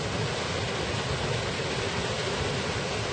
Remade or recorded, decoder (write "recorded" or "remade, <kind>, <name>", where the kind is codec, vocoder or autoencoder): recorded